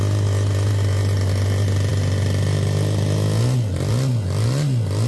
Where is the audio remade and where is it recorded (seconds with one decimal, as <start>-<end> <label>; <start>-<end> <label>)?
0.0-5.1 recorded